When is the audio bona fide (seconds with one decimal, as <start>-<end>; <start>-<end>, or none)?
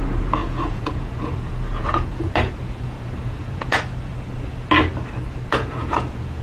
3.9-5.5